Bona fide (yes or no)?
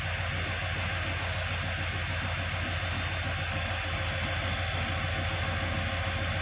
yes